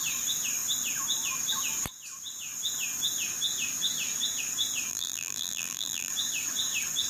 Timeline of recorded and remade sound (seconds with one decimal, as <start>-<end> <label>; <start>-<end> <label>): 0.0-4.9 recorded; 4.9-6.1 remade; 6.1-7.1 recorded